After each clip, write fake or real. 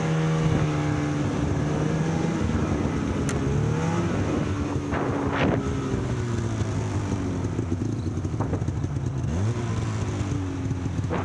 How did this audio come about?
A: real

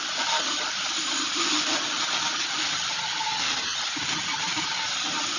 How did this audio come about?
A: real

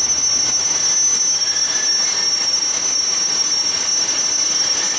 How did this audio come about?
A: real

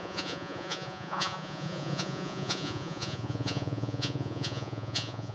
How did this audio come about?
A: fake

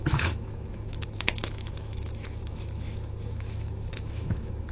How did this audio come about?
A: fake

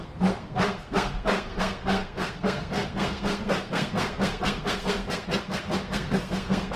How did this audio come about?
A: fake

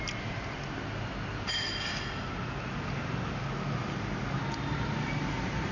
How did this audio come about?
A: real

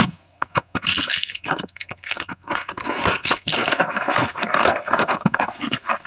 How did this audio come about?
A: fake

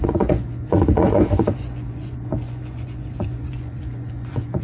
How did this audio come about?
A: fake